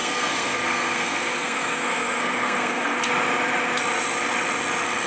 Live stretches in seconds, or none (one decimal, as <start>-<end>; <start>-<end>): 3.1-5.1